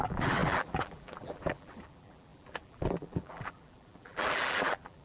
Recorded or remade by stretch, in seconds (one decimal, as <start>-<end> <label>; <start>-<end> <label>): 0.0-5.0 remade